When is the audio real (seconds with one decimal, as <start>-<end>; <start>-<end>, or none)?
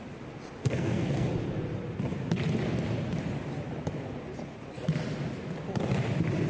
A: 0.0-0.6; 1.3-6.5